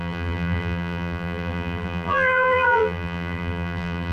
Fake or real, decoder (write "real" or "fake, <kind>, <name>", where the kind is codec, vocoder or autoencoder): fake, vocoder, BigVGAN v2